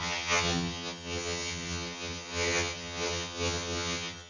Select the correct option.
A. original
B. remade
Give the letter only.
B